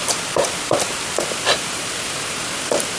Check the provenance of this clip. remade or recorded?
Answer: recorded